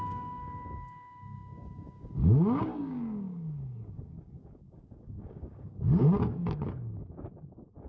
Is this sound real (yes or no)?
no